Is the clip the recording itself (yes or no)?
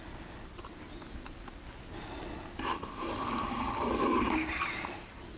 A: yes